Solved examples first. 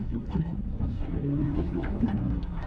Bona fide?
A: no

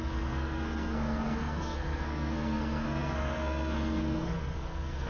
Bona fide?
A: no